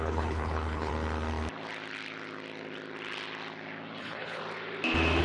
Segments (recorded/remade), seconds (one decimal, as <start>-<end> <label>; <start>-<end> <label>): 0.0-0.9 remade; 0.9-4.0 recorded; 4.0-4.4 remade; 4.4-5.2 recorded